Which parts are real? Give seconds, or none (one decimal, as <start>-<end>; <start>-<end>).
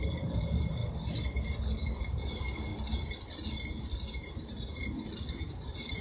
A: 0.8-2.0; 2.7-3.5